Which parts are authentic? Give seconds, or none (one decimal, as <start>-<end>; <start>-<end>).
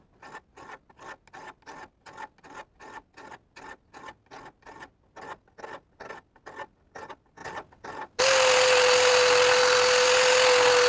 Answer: 0.0-7.4; 8.2-10.9